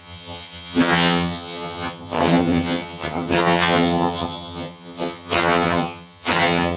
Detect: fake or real fake